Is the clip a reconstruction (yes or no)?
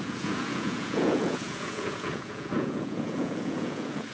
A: yes